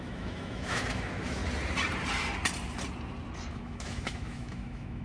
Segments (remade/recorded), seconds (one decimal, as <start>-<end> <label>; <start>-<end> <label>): 0.0-1.4 remade; 1.4-3.5 recorded; 3.5-5.0 remade